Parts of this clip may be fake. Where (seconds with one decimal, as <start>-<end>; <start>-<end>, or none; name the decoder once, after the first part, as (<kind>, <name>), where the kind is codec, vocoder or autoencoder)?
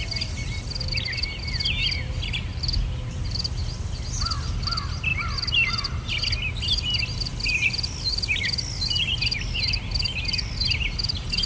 none